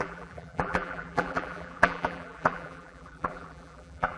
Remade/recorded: remade